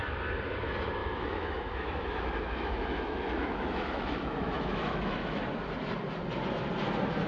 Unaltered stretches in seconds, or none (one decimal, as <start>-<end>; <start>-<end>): 0.0-1.0; 5.4-7.3